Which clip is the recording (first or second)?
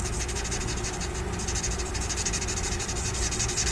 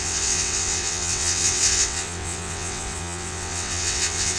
first